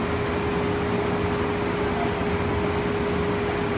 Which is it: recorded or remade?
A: recorded